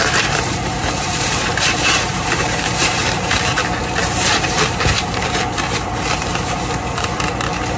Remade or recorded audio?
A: remade